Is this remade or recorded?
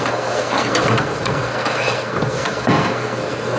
remade